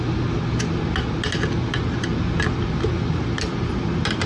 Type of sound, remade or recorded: recorded